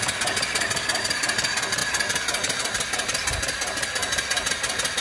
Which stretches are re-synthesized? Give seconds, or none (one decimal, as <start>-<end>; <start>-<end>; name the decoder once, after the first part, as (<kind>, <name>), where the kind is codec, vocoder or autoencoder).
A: 1.8-2.6 (vocoder, BigVGAN v2); 4.0-4.5

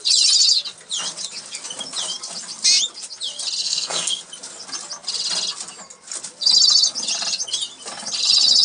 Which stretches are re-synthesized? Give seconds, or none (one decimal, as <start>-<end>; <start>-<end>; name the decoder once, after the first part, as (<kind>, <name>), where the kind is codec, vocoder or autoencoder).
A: 3.6-4.2 (codec, SNAC)

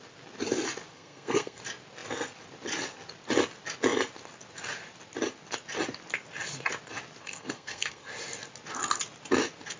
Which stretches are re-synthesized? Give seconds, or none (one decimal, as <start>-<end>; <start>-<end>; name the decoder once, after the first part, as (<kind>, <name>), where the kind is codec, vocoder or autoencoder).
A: 0.9-1.6 (codec, SNAC); 7.2-8.1

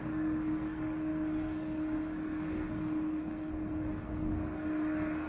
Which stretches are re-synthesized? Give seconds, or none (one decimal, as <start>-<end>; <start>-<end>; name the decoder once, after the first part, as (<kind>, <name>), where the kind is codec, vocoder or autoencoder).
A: 0.0-5.3 (codec, SNAC)